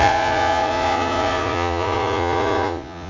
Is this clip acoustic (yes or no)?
no